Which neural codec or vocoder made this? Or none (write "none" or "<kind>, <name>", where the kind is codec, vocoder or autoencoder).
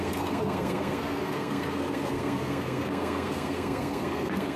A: codec, SNAC